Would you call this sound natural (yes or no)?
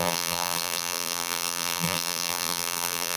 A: no